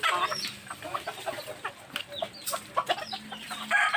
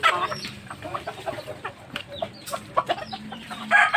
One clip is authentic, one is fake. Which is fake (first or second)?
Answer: second